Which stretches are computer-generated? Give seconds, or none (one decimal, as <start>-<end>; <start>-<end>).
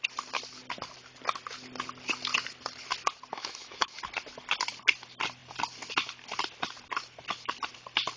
3.3-4.0